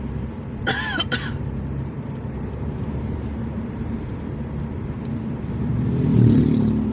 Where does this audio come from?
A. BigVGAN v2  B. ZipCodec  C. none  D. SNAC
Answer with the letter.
A